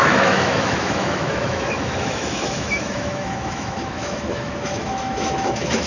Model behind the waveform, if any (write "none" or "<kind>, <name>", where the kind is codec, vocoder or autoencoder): autoencoder, DAC-VAE